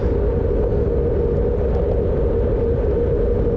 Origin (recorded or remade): recorded